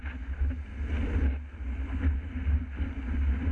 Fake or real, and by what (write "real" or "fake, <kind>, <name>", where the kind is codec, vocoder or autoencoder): real